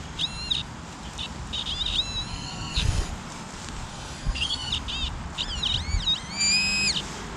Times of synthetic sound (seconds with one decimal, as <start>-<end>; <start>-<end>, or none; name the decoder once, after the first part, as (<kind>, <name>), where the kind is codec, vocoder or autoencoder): 2.3-3.1 (codec, SNAC); 3.9-4.7

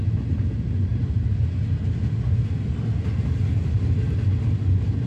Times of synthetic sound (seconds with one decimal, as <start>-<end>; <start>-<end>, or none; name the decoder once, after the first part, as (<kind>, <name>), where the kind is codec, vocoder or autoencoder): none

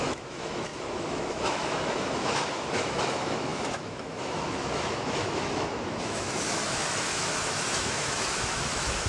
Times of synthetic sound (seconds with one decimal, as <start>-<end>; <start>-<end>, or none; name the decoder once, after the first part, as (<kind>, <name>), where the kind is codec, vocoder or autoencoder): 0.0-9.1 (autoencoder, DAC-VAE)

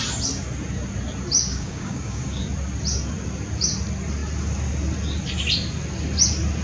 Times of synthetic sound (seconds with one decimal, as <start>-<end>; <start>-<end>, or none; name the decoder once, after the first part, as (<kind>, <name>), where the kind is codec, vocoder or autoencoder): 1.5-2.4 (codec, DAC)

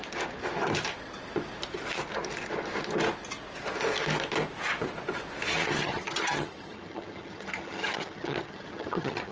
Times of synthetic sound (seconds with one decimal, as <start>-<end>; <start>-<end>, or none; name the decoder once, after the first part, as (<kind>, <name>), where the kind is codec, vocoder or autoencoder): 5.5-9.3 (vocoder, HiFi-GAN)